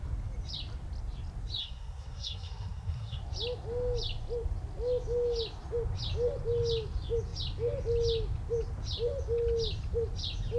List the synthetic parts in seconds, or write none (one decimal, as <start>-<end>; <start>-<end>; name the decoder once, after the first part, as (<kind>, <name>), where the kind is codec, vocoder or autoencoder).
1.6-3.2 (codec, SNAC)